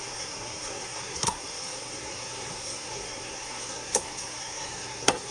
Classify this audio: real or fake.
fake